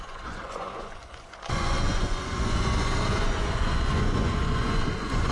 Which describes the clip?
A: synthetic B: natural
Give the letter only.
A